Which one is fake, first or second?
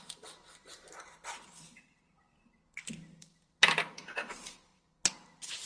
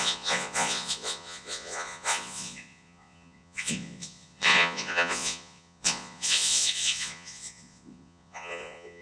second